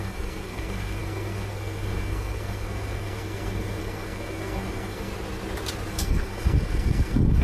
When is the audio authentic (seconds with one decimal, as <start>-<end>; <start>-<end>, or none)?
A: 5.1-5.9

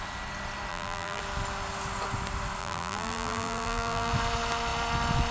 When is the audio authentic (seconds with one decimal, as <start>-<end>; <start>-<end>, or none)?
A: 0.0-0.7; 1.2-2.6; 4.1-5.3

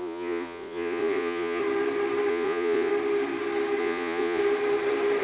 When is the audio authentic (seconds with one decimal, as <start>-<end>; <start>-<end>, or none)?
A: 1.6-2.3; 2.9-3.8; 4.4-5.2

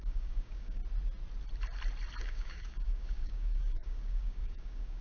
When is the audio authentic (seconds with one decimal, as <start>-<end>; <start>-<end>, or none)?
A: 0.8-2.2

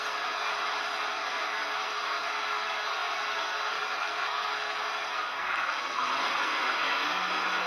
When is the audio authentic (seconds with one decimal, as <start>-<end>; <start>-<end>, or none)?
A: 0.5-1.1

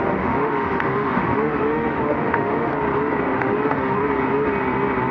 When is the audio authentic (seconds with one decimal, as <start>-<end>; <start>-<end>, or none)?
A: 2.7-3.3; 4.0-5.1